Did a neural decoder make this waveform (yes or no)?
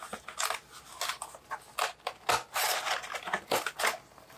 no